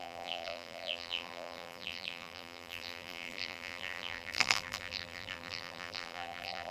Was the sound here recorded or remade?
remade